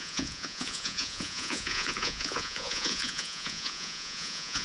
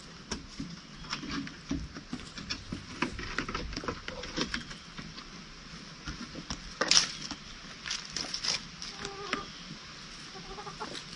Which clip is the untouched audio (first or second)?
second